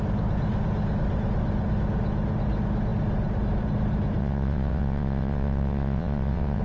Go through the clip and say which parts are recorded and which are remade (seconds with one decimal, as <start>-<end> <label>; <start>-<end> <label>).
0.0-4.2 recorded; 4.2-6.6 remade